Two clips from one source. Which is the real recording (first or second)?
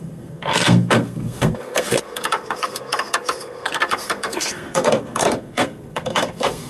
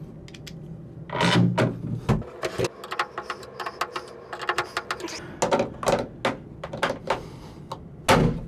second